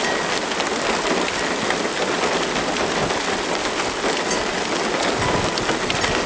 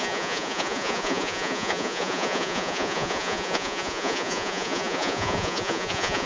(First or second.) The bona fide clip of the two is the first